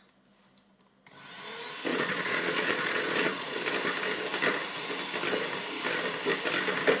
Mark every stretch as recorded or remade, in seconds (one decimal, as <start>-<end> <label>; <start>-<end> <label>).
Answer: 0.0-1.9 recorded; 1.9-3.6 remade; 3.6-7.0 recorded